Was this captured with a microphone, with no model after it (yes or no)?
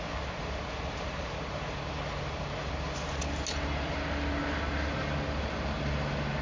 yes